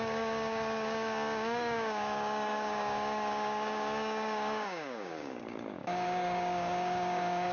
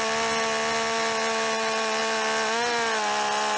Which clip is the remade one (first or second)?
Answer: first